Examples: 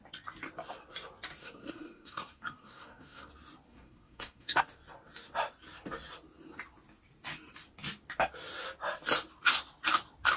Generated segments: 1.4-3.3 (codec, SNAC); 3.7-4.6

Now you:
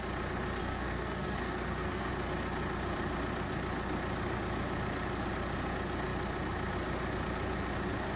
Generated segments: 0.6-2.1 (codec, SNAC)

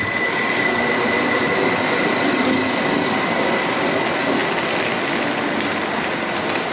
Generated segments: none

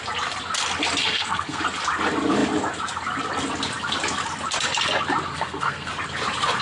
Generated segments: 1.0-1.6 (codec, SNAC); 5.3-5.9